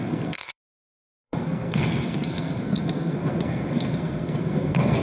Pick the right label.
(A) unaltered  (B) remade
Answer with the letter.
B